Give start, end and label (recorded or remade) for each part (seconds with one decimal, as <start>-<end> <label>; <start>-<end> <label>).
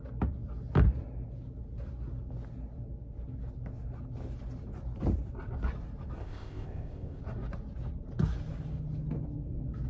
0.0-6.2 recorded; 6.2-7.2 remade; 7.2-9.9 recorded